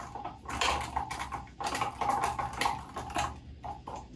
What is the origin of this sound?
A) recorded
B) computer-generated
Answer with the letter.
A